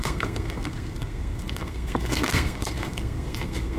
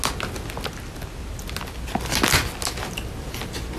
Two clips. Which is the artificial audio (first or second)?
first